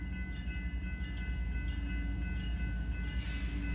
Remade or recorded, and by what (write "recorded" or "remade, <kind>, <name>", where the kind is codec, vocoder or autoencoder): recorded